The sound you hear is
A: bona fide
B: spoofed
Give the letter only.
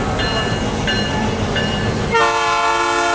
A